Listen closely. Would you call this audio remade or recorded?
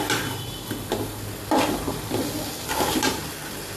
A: recorded